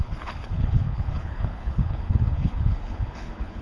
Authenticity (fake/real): fake